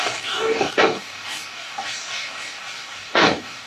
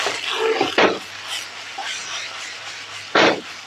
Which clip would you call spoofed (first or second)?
first